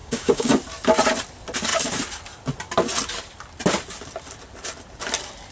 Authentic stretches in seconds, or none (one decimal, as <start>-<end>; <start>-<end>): 0.5-5.5